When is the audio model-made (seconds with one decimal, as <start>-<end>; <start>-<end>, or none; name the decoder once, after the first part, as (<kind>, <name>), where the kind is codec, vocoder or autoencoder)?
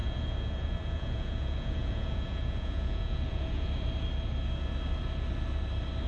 0.0-3.7 (vocoder, Vocos)